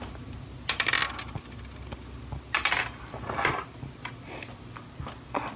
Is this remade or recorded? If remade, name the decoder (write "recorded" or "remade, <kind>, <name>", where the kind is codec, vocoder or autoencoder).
recorded